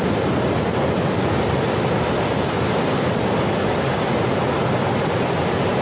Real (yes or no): yes